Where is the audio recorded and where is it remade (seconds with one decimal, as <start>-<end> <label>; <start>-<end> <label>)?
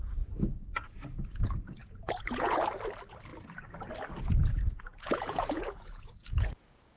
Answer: 0.0-1.8 recorded; 1.8-2.6 remade; 2.6-4.4 recorded; 4.4-7.0 remade